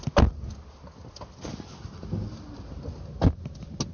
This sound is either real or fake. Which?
real